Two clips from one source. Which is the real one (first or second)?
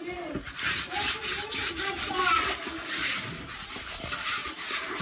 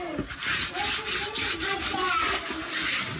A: second